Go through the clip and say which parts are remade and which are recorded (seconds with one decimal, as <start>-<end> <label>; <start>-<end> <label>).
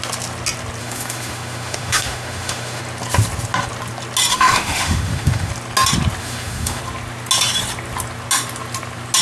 0.0-0.8 recorded; 0.8-2.8 remade; 2.8-4.3 recorded; 4.3-5.5 remade; 5.5-6.2 recorded; 6.2-6.8 remade; 6.8-9.2 recorded